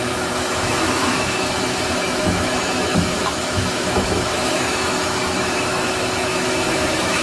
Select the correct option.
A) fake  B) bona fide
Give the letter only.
A